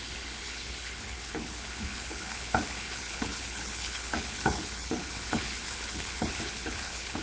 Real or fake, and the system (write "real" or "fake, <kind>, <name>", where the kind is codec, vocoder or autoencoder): fake, codec, HILCodec